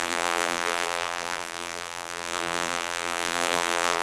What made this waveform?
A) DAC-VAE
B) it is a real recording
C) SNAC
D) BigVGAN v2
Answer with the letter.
D